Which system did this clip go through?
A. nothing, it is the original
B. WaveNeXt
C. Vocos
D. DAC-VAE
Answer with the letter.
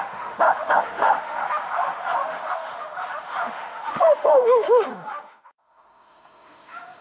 D